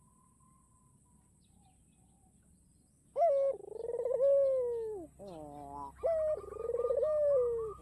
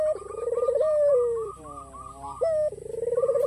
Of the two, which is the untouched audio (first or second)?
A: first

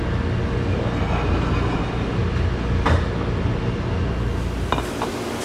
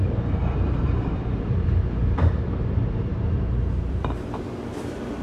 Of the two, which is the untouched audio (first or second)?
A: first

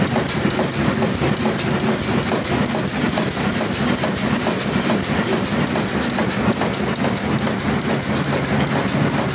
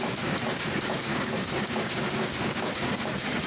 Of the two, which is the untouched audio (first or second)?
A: first